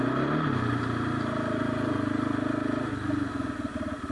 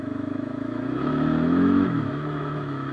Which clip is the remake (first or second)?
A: second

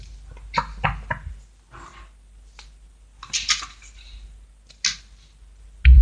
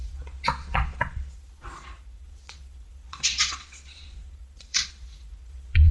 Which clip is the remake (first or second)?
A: second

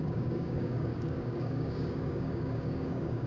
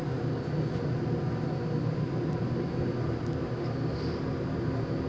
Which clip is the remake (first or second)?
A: first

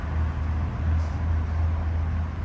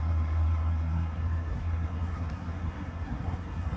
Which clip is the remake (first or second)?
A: second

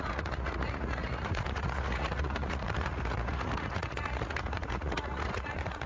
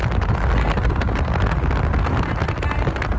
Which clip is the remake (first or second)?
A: first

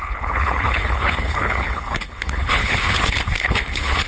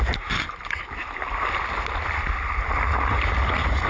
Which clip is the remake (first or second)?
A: first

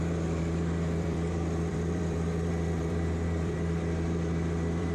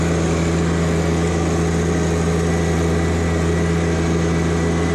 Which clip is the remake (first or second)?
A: first